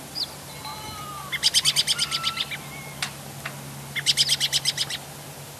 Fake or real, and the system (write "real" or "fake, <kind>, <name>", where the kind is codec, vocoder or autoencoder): real